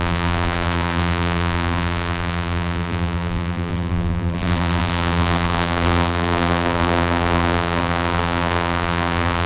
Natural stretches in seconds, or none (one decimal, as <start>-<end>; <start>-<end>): none